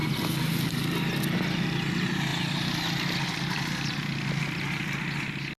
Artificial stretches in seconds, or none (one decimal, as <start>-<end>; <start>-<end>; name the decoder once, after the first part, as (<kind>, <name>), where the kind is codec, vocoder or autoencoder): none

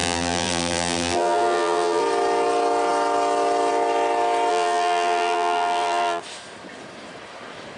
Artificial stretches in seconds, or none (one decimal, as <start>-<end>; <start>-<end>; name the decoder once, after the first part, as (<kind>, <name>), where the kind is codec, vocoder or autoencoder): 0.0-2.0 (vocoder, BigVGAN v2); 4.5-6.2